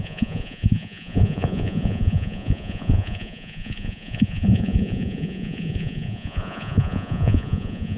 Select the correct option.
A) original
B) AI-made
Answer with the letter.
B